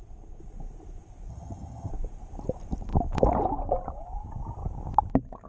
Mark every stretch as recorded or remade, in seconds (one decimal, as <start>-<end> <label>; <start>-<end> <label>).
0.0-1.3 recorded; 1.3-1.9 remade; 1.9-5.5 recorded